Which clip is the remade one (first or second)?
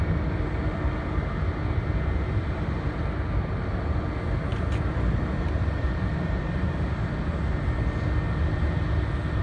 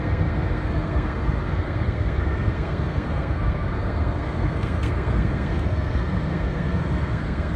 second